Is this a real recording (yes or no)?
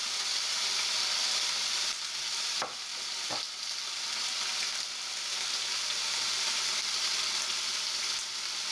yes